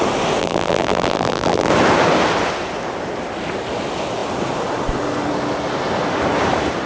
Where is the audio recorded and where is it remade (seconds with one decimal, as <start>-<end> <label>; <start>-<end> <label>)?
0.0-0.4 recorded; 0.4-1.7 remade; 1.7-6.9 recorded